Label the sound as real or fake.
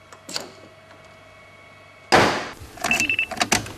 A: real